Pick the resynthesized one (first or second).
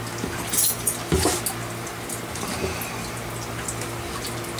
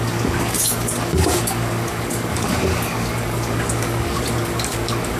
second